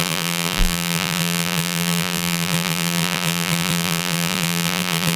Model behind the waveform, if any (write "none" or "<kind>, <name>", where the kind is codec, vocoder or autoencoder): vocoder, BigVGAN v2